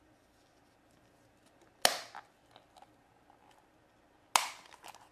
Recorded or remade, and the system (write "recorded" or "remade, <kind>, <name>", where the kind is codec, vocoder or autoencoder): recorded